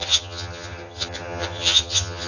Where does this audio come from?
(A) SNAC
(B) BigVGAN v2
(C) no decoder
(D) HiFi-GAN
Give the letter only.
D